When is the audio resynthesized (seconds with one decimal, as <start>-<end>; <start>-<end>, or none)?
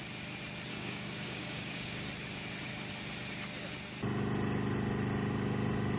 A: 0.7-2.1